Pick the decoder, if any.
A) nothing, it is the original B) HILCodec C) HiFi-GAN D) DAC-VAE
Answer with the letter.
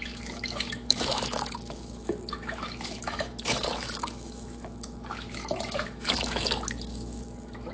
D